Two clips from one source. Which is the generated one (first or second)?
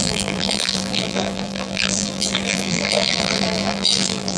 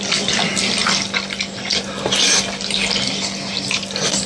first